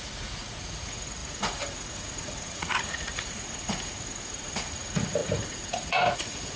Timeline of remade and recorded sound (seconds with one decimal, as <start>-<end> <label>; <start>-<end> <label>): 0.0-6.6 remade